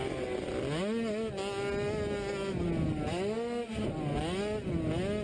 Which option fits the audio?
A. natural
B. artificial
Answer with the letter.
A